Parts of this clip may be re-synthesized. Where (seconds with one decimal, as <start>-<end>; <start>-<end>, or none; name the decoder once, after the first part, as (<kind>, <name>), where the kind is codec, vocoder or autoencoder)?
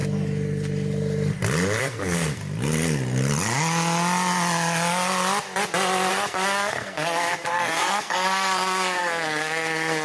1.8-2.4 (codec, SNAC); 6.1-10.0